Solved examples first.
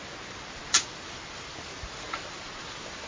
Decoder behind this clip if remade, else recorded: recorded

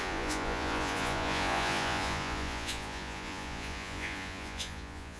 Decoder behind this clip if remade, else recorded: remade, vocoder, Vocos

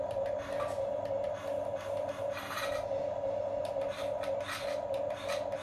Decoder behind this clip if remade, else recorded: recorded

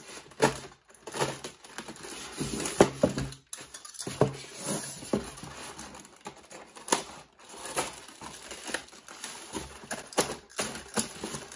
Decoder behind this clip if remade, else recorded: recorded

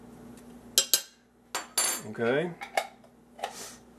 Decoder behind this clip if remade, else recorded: recorded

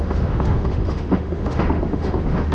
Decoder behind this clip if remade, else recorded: remade, autoencoder, DAC-VAE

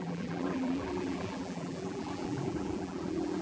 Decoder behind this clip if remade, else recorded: remade, vocoder, BigVGAN v2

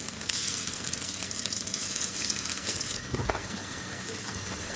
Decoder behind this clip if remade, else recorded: remade, codec, SNAC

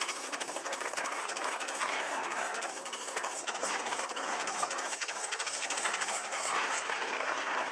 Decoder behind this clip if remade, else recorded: remade, codec, SNAC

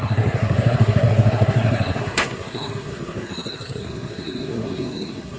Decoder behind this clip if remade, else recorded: remade, codec, SNAC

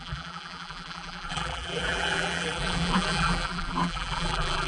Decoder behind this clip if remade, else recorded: remade, vocoder, BigVGAN v2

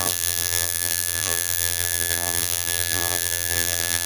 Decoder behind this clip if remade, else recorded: remade, vocoder, BigVGAN v2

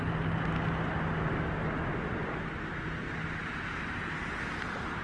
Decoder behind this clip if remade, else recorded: recorded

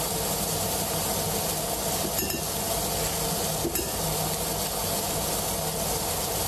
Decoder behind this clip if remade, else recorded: recorded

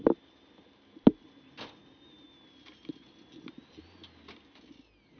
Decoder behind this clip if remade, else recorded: recorded